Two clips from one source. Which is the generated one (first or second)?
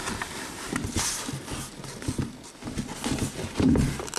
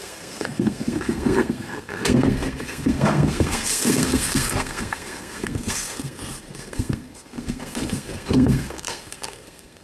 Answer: second